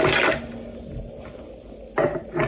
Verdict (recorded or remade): recorded